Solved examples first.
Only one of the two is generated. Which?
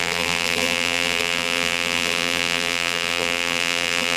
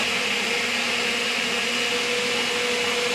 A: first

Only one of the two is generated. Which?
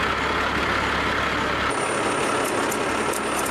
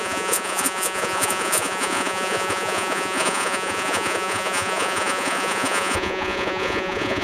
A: second